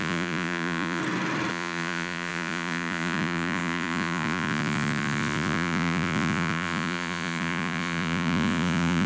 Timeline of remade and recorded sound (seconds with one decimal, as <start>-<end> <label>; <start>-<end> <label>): 0.0-1.0 remade; 1.0-1.5 recorded; 1.5-9.1 remade